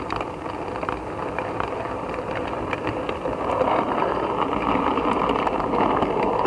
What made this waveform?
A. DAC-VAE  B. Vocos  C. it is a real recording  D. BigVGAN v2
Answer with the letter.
C